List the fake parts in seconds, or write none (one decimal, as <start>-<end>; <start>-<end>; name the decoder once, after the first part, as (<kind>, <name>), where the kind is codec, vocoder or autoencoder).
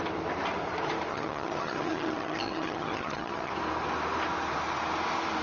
1.1-3.5 (vocoder, HiFi-GAN)